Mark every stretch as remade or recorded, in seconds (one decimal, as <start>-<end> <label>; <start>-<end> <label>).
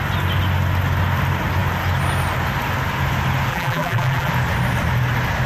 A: 0.0-3.5 recorded; 3.5-4.3 remade; 4.3-5.5 recorded